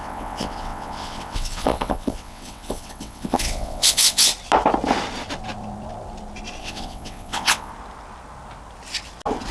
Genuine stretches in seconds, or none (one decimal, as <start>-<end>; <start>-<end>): 4.3-6.6; 7.7-9.5